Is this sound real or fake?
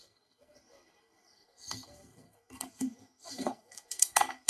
fake